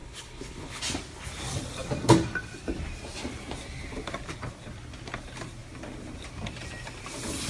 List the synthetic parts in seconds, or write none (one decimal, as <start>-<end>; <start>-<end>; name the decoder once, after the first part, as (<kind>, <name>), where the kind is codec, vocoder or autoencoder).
0.0-0.8 (codec, HILCodec)